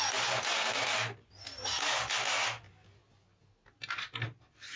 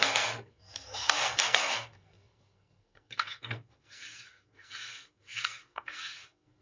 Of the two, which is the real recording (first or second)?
first